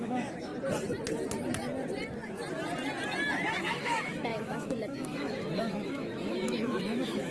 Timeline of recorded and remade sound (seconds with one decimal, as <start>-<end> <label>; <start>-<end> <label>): 0.0-0.5 remade; 0.5-3.6 recorded; 3.6-7.3 remade